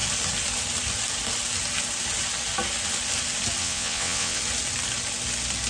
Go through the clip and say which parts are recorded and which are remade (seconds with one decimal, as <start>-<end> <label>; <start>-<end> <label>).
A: 0.0-3.6 recorded; 3.6-4.4 remade; 4.4-5.7 recorded